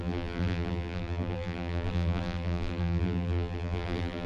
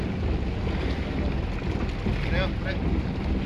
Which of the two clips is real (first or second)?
second